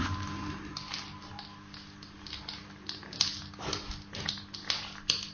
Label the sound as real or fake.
real